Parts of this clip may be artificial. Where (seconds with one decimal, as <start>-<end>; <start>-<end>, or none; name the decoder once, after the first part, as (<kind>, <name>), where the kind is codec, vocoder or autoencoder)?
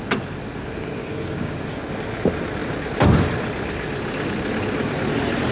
1.0-1.6 (codec, DAC)